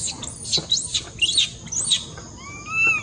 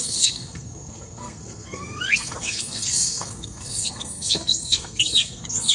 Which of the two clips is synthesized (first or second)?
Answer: second